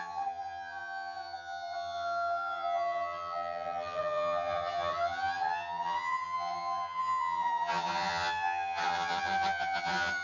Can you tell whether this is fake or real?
fake